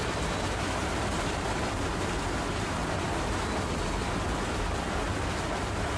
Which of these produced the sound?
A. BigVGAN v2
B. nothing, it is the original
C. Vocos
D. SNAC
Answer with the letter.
B